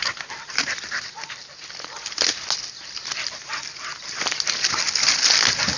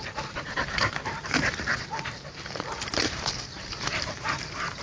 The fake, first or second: second